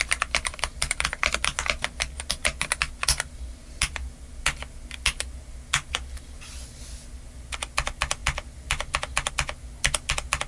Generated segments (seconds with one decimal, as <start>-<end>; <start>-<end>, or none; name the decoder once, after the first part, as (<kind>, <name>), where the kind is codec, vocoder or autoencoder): none